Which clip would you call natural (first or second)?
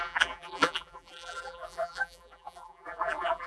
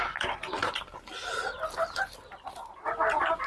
second